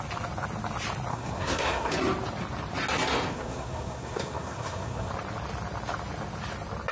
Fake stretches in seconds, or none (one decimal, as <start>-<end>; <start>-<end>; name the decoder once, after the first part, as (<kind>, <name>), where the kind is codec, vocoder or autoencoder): 1.1-1.9 (codec, SNAC); 3.3-5.1